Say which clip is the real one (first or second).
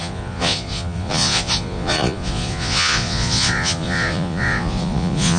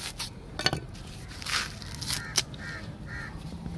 second